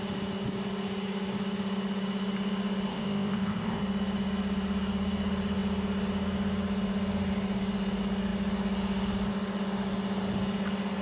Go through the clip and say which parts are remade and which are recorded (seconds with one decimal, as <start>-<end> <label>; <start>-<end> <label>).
0.0-2.9 recorded; 2.9-3.8 remade; 3.8-11.0 recorded